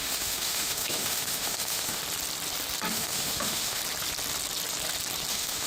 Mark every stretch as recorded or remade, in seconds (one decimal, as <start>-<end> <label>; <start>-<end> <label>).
0.0-2.0 remade; 2.0-2.9 recorded; 2.9-3.8 remade; 3.8-5.3 recorded; 5.3-5.7 remade